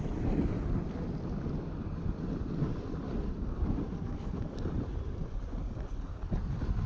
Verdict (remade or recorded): recorded